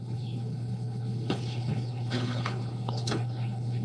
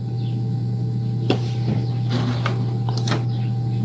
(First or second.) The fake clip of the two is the first